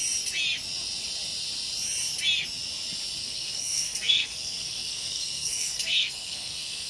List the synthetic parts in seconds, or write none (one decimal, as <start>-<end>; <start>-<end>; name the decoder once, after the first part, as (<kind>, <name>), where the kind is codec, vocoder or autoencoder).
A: 3.2-6.9 (codec, SNAC)